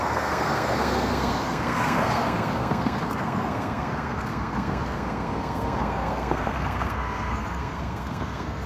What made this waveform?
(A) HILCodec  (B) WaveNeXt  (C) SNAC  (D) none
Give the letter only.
C